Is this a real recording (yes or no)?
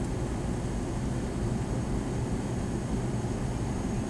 yes